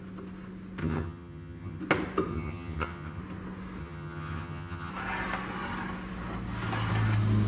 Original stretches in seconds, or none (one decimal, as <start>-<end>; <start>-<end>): 0.0-0.8; 1.8-2.3; 3.2-3.8; 4.9-7.5